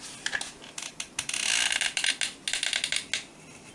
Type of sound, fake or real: real